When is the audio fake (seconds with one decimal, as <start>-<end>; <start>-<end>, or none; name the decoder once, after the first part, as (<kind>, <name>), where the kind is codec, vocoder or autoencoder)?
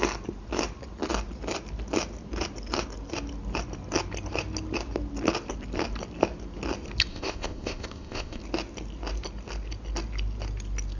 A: 7.1-8.4 (codec, ZipCodec)